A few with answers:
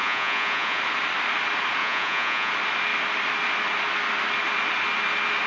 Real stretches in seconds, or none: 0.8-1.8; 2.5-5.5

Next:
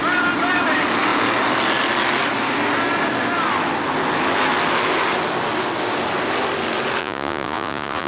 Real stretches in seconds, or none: 0.0-7.0

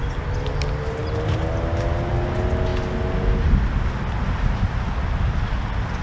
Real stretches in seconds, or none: 0.0-6.0

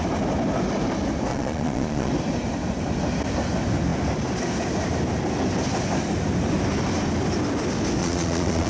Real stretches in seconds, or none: 0.0-1.3; 2.1-8.0

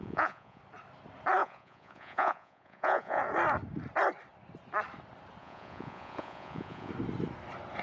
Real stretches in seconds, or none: 0.6-1.4; 3.2-5.4; 6.9-7.8

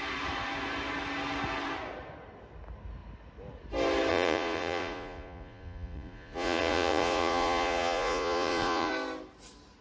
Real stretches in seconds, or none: 0.0-4.1; 8.9-9.8

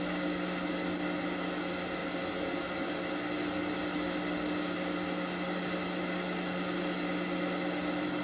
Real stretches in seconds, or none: 0.0-8.2